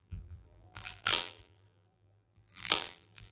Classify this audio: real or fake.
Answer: fake